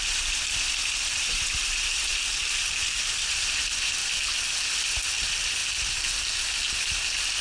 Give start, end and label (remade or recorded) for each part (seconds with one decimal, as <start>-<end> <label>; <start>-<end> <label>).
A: 0.0-4.0 remade; 4.0-4.7 recorded; 4.7-5.6 remade; 5.6-6.4 recorded; 6.4-7.4 remade